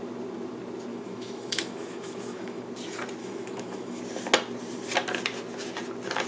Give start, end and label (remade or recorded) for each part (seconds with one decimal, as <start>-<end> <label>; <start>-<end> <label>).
0.0-0.9 recorded; 0.9-2.6 remade; 2.6-3.2 recorded; 3.2-4.0 remade; 4.0-6.3 recorded